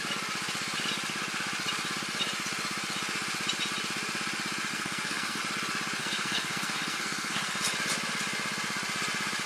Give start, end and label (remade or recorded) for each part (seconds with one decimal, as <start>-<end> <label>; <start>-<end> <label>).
0.0-4.7 recorded; 4.7-5.4 remade; 5.4-6.0 recorded; 6.0-7.6 remade; 7.6-9.5 recorded